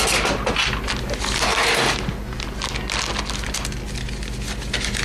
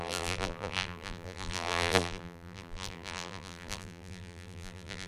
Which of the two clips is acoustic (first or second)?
first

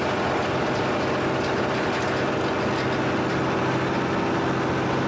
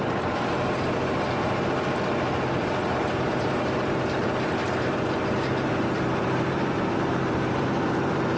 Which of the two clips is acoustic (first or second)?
first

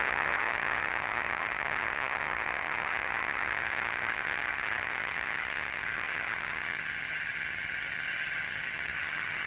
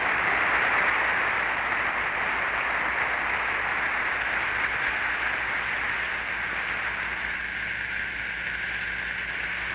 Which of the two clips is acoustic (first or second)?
second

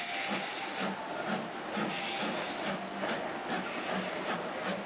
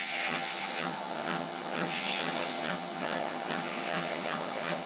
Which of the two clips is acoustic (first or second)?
first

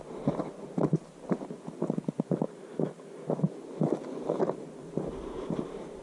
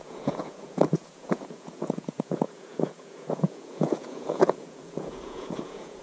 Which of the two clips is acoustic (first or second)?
first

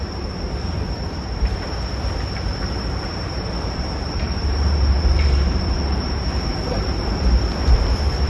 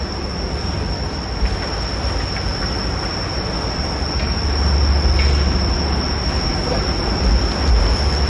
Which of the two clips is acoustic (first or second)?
second